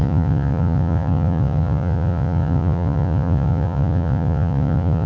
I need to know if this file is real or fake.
fake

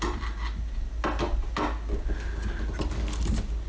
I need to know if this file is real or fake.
real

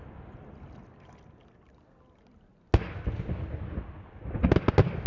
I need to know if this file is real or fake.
real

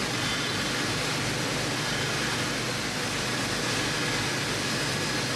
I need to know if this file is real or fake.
real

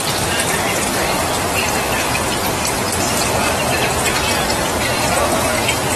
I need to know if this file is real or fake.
real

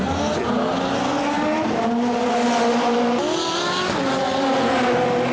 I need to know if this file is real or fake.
real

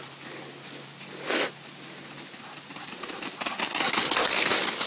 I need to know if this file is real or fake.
real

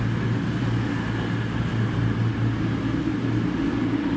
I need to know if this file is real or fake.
real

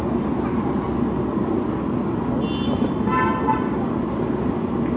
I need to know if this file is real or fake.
real